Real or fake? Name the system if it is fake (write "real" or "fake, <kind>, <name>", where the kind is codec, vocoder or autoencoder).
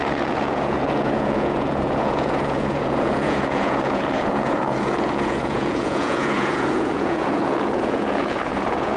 fake, vocoder, Vocos